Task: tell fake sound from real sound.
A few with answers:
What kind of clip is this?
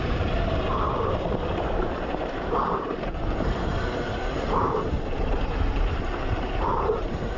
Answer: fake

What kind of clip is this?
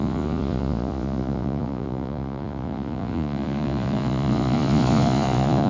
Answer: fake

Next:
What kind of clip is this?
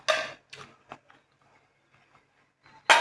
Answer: real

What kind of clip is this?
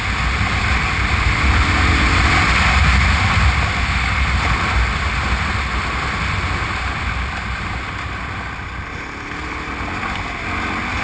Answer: real